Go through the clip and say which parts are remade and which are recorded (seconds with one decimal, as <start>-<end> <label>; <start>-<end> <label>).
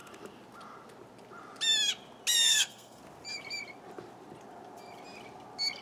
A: 0.0-2.5 recorded; 2.5-3.0 remade; 3.0-5.8 recorded